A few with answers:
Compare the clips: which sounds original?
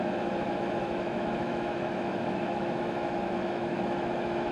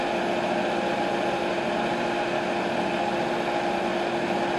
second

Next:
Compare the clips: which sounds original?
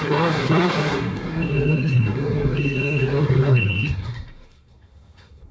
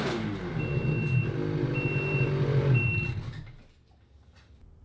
second